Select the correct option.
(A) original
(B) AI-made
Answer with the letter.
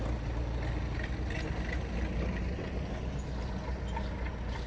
A